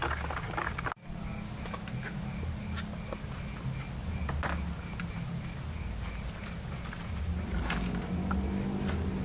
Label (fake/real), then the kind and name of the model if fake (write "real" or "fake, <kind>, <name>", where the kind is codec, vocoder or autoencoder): real